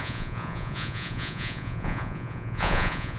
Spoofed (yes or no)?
yes